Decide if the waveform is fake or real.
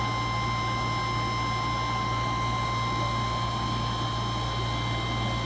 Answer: real